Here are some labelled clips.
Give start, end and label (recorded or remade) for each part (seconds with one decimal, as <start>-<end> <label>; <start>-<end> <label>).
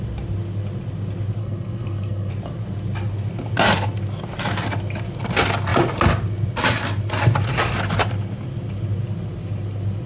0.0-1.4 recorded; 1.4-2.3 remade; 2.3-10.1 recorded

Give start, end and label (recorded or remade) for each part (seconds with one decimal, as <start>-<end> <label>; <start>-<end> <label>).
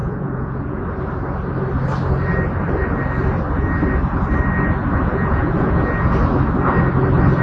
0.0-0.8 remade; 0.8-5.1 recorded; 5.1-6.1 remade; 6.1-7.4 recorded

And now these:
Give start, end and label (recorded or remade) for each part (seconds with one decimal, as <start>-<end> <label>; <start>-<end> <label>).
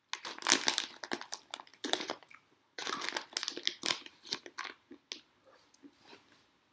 0.0-1.7 recorded; 1.7-2.9 remade; 2.9-6.7 recorded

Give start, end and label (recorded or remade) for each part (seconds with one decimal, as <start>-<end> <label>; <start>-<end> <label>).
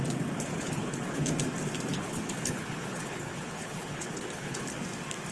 0.0-0.5 recorded; 0.5-1.3 remade; 1.3-1.9 recorded; 1.9-4.8 remade; 4.8-5.3 recorded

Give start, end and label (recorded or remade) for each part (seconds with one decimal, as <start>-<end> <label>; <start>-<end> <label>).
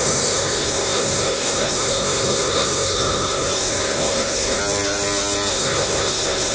0.0-4.6 remade; 4.6-5.5 recorded; 5.5-6.5 remade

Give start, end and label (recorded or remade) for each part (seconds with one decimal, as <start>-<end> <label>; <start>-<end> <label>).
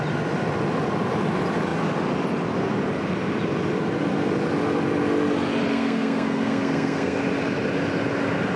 0.0-5.7 recorded; 5.7-7.2 remade; 7.2-8.6 recorded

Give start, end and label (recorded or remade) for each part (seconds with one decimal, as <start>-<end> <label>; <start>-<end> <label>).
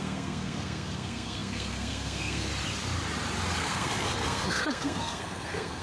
0.0-2.5 remade; 2.5-3.6 recorded; 3.6-5.8 remade